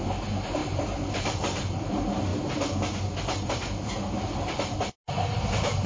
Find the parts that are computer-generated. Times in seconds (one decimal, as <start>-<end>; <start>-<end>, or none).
0.6-1.4